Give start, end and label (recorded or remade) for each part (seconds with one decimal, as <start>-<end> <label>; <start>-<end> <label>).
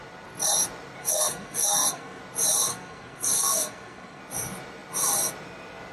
0.0-1.0 recorded; 1.0-2.2 remade; 2.2-2.7 recorded; 2.7-4.2 remade; 4.2-5.9 recorded